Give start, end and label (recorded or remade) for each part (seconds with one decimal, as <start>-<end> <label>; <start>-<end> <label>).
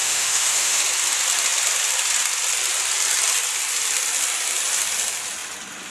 0.0-0.8 remade; 0.8-5.9 recorded